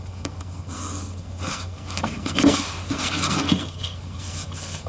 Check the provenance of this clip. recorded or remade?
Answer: remade